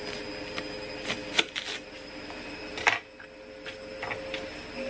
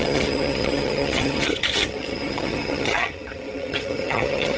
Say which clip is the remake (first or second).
second